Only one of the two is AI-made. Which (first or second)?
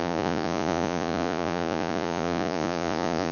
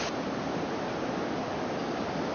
first